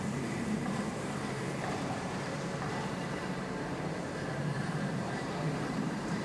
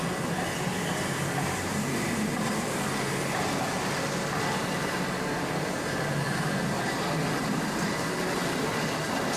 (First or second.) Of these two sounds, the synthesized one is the first